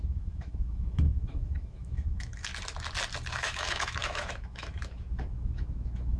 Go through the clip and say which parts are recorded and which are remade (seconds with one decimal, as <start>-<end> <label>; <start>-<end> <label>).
0.0-2.5 remade; 2.5-3.3 recorded; 3.3-6.2 remade